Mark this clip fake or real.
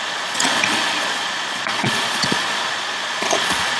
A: fake